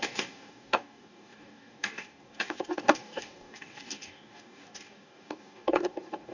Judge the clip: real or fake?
fake